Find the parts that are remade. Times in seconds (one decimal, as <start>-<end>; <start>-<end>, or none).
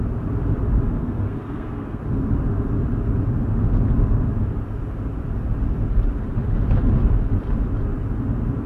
1.0-2.0